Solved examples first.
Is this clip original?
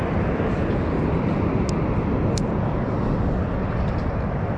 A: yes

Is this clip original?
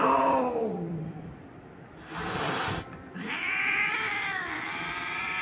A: no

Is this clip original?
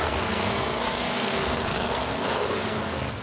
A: no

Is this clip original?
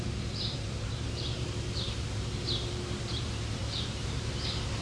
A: no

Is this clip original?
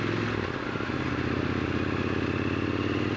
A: yes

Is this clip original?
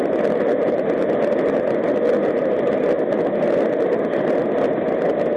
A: yes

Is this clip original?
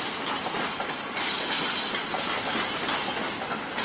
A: yes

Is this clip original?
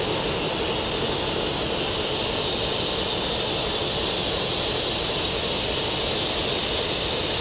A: yes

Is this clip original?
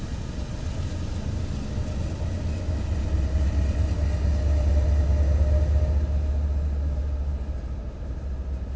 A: yes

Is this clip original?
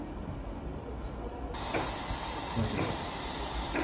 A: yes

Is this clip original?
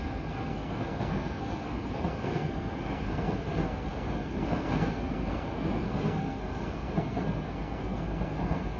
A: no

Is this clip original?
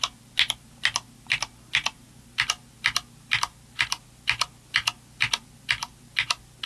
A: yes